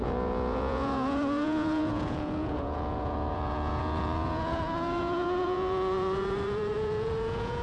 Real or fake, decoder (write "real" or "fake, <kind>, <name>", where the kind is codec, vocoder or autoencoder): fake, vocoder, Vocos